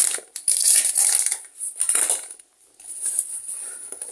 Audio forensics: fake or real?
real